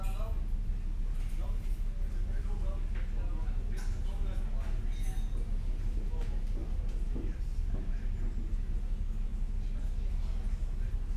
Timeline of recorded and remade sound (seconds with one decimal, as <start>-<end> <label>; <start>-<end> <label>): 0.0-6.6 recorded; 6.6-7.7 remade; 7.7-11.2 recorded